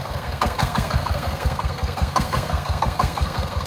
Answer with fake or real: fake